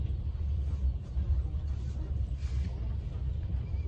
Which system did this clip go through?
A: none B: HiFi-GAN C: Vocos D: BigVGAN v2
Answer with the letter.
A